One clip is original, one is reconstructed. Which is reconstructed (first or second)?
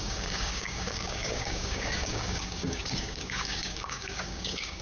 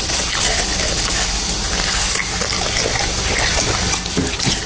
first